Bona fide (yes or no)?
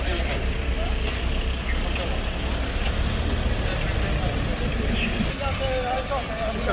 yes